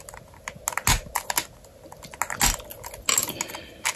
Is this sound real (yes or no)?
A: yes